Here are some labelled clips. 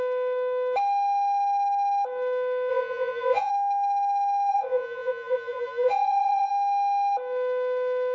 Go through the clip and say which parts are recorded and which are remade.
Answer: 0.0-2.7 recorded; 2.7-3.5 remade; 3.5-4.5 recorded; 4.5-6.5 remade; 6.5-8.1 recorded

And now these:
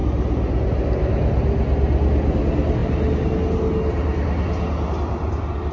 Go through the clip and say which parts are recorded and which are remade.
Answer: 0.0-5.7 recorded

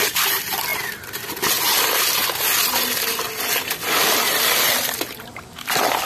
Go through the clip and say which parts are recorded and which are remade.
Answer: 0.0-6.1 recorded

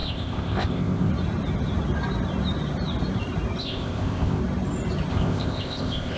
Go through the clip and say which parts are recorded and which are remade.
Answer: 0.0-1.1 remade; 1.1-3.6 recorded; 3.6-4.4 remade; 4.4-5.1 recorded; 5.1-6.2 remade

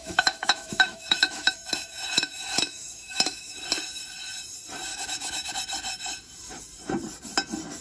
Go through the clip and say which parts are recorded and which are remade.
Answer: 0.0-3.6 remade; 3.6-4.9 recorded; 4.9-5.5 remade; 5.5-7.8 recorded

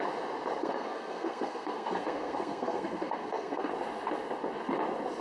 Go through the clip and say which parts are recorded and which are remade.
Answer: 0.0-0.6 recorded; 0.6-3.7 remade; 3.7-5.2 recorded